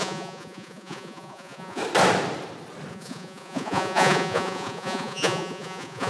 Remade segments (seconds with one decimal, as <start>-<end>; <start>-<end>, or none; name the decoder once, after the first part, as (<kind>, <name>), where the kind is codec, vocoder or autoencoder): 0.0-1.8 (vocoder, Vocos); 2.9-6.1